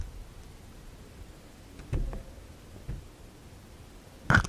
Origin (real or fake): real